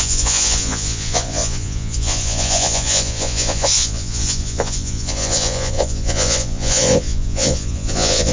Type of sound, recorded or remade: remade